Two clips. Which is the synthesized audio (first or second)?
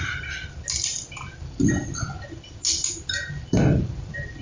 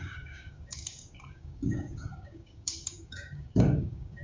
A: second